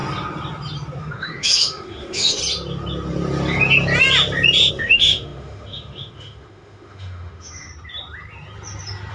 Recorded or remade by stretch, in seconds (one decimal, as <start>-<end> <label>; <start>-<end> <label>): 0.0-1.0 recorded; 1.0-2.4 remade; 2.4-4.7 recorded; 4.7-7.7 remade; 7.7-9.1 recorded